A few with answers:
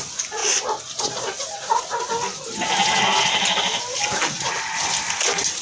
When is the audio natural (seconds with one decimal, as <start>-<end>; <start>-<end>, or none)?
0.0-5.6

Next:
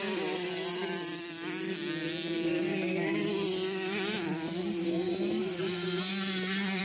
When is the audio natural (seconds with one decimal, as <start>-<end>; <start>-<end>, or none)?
0.0-6.8

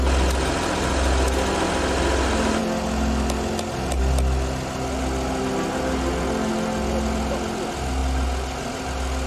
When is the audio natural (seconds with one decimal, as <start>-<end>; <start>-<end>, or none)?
0.0-9.3